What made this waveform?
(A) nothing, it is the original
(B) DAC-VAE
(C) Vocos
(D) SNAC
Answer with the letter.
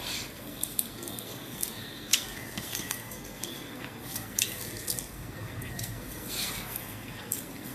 D